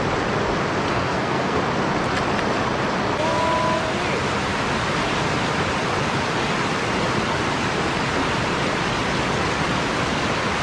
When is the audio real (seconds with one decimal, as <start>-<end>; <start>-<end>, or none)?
0.0-0.9; 1.6-10.6